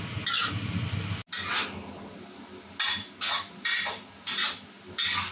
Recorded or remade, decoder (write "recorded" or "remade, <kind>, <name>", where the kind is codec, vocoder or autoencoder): recorded